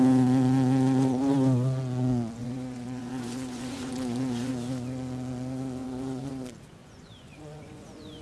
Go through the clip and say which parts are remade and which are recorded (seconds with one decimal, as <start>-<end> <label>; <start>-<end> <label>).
0.0-2.4 recorded; 2.4-4.5 remade; 4.5-5.8 recorded; 5.8-6.3 remade; 6.3-6.8 recorded; 6.8-8.2 remade